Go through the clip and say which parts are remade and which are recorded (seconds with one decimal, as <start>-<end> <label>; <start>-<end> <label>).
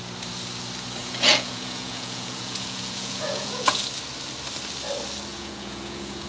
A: 0.0-1.0 recorded; 1.0-3.8 remade; 3.8-5.3 recorded; 5.3-6.3 remade